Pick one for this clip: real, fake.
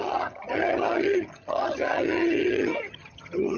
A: fake